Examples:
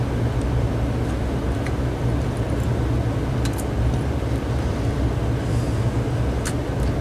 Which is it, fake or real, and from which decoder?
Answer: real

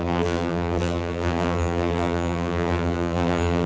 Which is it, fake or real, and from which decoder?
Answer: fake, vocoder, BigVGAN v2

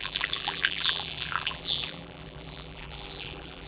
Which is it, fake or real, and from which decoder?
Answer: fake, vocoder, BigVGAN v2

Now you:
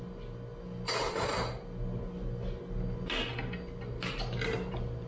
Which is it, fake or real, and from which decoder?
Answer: real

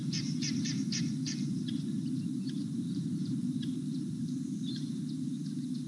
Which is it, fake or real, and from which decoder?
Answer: fake, vocoder, BigVGAN v2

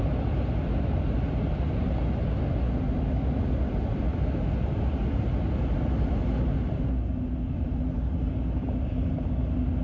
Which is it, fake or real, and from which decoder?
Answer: real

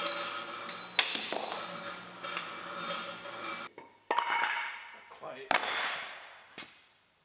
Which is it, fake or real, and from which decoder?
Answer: real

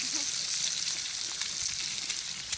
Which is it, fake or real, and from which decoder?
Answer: real